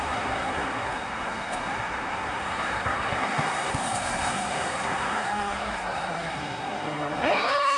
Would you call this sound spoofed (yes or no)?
yes